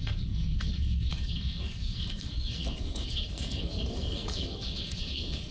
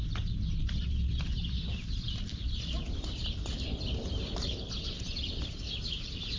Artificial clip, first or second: first